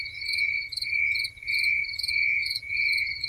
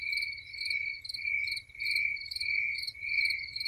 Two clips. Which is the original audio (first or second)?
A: second